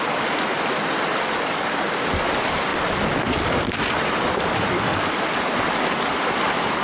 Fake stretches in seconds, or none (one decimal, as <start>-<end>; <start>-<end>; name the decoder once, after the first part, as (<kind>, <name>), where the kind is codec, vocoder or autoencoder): none